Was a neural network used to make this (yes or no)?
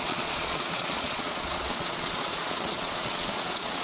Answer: yes